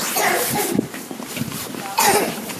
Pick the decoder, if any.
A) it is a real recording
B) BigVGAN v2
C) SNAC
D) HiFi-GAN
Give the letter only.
B